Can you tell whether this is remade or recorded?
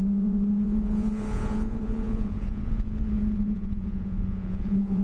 remade